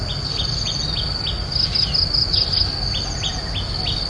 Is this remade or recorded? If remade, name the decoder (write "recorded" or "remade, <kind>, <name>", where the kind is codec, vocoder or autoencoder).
recorded